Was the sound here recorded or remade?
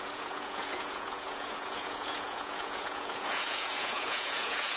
remade